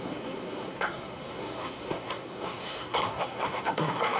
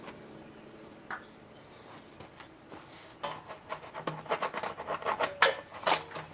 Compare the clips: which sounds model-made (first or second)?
first